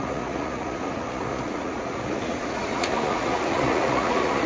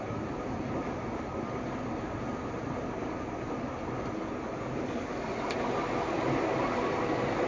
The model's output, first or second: first